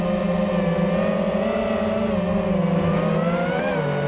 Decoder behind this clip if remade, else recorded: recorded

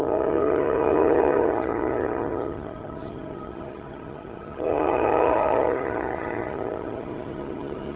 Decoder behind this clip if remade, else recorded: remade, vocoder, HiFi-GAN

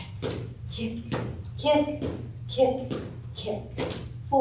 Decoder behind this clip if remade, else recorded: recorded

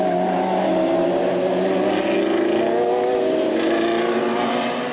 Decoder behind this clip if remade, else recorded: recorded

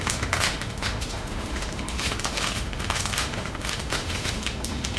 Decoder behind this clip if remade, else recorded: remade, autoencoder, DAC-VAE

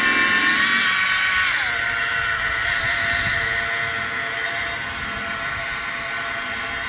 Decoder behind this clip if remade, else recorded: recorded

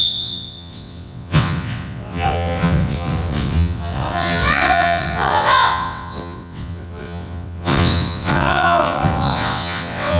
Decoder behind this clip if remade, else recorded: remade, vocoder, WaveNeXt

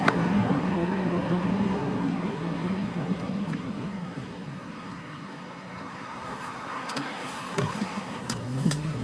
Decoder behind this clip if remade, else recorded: remade, codec, SNAC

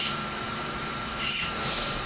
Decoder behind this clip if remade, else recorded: remade, vocoder, BigVGAN v2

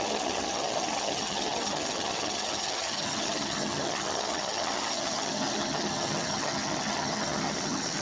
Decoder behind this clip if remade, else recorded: remade, vocoder, HiFi-GAN